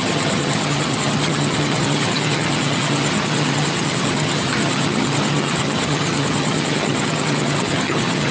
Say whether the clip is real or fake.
fake